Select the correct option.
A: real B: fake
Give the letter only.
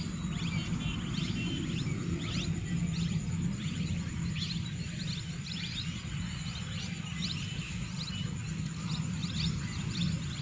A